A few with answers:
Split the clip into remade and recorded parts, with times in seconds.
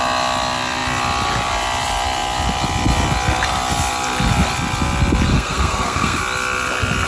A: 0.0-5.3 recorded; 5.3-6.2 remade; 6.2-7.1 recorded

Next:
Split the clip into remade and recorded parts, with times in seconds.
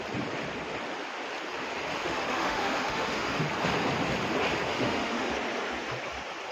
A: 0.0-2.0 recorded; 2.0-3.4 remade; 3.4-4.7 recorded; 4.7-5.3 remade; 5.3-6.5 recorded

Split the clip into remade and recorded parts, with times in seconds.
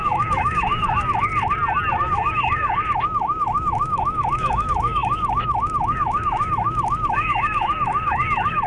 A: 0.0-1.3 remade; 1.3-1.9 recorded; 1.9-8.7 remade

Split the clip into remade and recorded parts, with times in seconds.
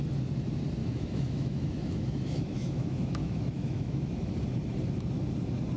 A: 0.0-0.8 recorded; 0.8-4.3 remade; 4.3-5.8 recorded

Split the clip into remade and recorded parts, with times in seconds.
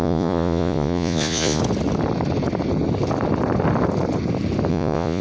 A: 0.0-1.6 remade; 1.6-4.7 recorded; 4.7-5.2 remade